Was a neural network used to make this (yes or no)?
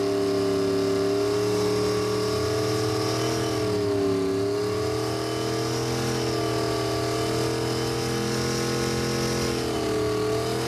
no